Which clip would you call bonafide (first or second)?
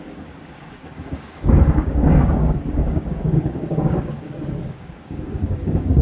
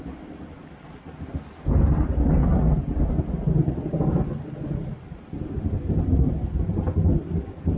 second